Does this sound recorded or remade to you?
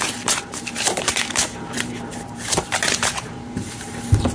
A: remade